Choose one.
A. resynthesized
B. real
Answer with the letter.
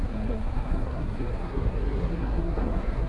A